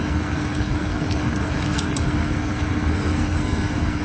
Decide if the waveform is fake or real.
fake